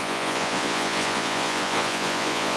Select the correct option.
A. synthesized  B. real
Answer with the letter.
A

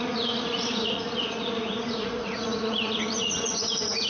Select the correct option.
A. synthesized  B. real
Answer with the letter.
A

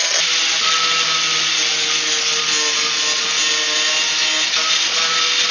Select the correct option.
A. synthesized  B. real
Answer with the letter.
B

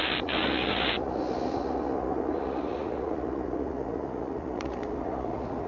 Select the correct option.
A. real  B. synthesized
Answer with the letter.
B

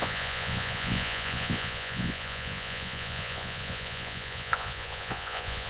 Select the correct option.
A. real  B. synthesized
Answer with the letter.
B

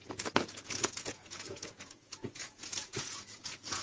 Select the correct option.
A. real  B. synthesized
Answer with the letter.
B